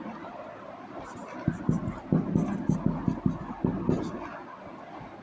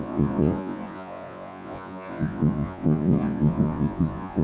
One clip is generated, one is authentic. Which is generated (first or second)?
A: second